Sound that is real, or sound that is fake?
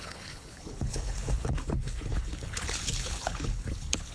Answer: fake